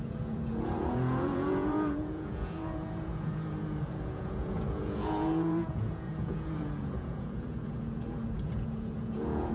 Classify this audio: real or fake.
fake